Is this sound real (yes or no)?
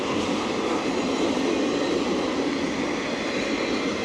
yes